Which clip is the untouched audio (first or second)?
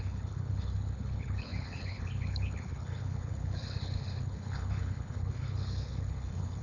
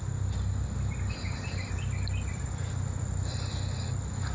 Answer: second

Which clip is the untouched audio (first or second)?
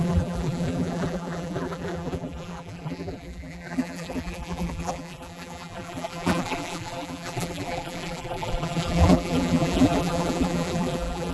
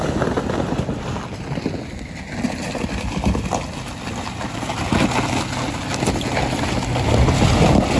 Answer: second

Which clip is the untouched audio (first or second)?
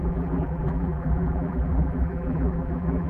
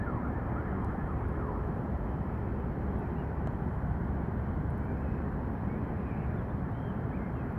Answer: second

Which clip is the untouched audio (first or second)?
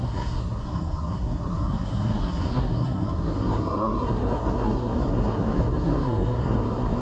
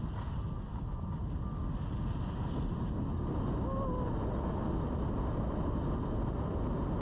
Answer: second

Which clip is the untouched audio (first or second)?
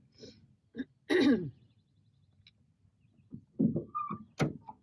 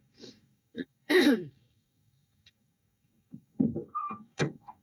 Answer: first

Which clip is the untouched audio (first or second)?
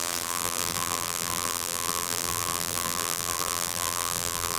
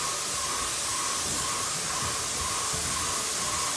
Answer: second